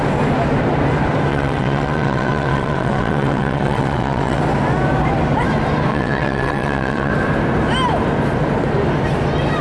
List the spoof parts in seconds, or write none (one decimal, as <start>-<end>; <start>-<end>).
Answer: 1.3-4.4; 5.9-7.1